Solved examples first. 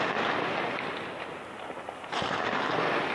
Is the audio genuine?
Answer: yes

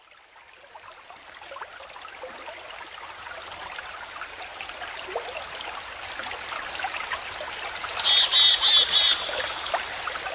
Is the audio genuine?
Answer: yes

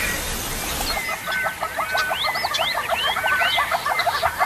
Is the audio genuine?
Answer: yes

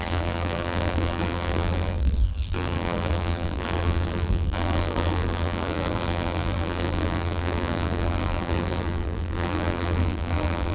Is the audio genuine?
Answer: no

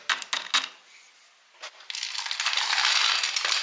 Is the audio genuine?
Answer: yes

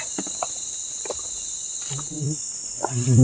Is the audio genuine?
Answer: yes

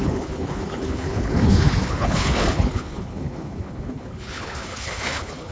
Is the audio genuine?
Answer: no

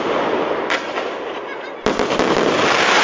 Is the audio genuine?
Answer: yes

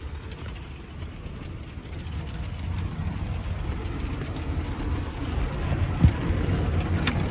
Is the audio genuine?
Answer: yes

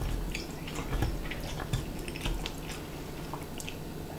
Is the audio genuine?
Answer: yes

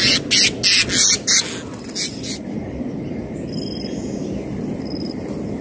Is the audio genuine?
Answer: yes